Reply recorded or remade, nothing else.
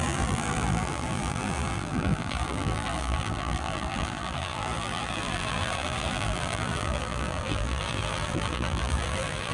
remade